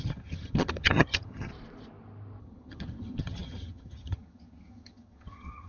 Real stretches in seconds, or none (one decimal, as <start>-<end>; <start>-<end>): 1.5-2.4